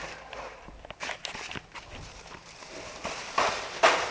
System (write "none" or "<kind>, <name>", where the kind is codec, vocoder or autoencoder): none